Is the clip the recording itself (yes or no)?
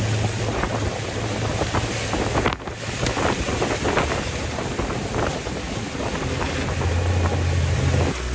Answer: yes